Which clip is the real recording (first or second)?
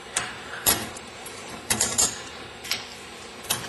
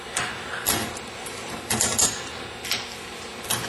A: second